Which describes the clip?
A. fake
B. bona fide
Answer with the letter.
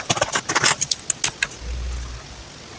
B